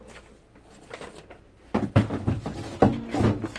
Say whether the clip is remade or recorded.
recorded